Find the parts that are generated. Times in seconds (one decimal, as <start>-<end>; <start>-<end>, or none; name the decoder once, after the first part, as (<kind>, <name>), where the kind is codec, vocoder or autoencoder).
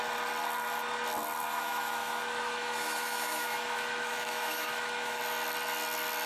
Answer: 1.5-5.2 (autoencoder, DAC-VAE)